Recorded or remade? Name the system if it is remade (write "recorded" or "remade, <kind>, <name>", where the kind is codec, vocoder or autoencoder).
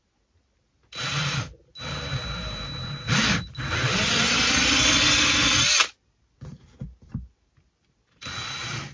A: recorded